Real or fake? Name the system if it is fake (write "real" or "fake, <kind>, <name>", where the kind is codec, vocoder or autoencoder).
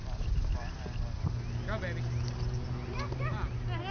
real